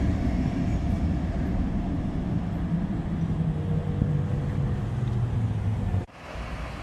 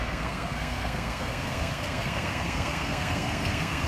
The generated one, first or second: second